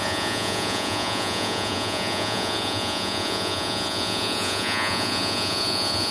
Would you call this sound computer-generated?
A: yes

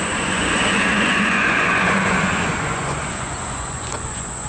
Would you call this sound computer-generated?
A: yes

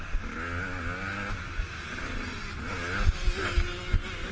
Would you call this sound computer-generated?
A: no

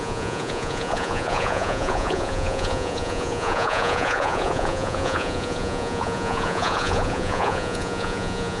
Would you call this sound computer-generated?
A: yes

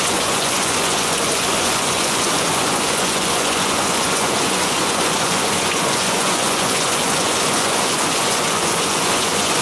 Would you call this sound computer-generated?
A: yes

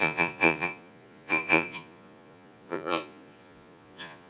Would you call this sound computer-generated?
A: yes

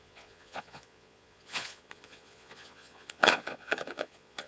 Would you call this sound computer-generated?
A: yes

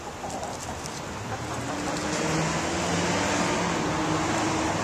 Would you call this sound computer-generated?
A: no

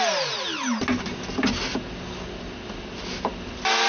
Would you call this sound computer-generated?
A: no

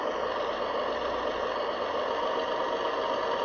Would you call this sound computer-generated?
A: no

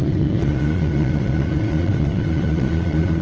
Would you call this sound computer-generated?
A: yes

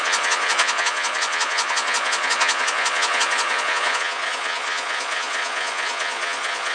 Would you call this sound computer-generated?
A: yes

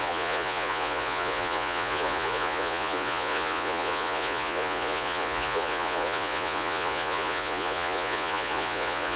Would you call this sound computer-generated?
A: yes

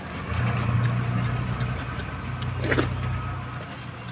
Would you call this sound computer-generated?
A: no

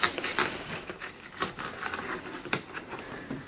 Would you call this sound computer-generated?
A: no